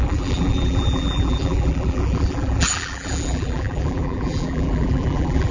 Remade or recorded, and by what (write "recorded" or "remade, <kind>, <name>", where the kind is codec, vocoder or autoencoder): remade, vocoder, BigVGAN v2